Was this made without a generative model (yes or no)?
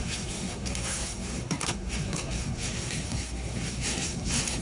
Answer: no